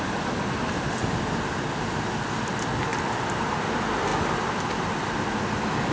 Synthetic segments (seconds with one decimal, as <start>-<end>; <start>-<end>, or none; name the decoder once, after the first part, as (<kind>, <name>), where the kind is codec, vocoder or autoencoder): 2.9-3.6 (vocoder, BigVGAN v2); 4.1-4.7